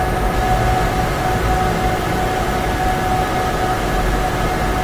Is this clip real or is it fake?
real